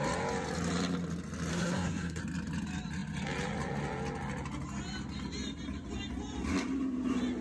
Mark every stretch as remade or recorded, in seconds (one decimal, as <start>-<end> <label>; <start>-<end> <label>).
0.0-1.5 recorded; 1.5-2.2 remade; 2.2-7.4 recorded